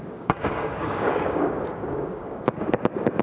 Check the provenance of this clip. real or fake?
fake